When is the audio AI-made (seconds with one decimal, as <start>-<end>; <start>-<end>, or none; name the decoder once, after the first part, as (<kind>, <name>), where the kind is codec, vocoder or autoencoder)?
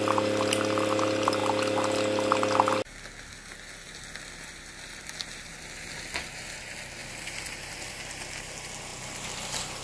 none